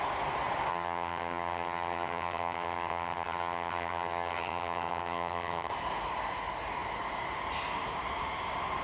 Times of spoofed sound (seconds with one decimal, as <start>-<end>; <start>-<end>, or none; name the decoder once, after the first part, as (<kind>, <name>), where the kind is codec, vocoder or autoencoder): 0.7-5.7 (vocoder, HiFi-GAN)